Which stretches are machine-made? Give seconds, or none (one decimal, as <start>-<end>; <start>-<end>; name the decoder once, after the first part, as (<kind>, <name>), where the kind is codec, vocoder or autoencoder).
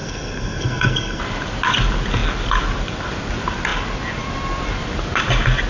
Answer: 0.0-1.2 (codec, SNAC)